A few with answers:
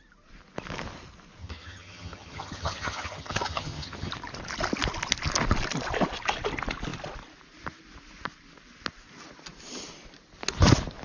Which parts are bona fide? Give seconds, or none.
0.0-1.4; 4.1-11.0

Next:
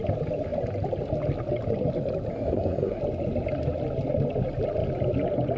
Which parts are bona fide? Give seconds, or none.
0.0-2.3; 3.0-5.6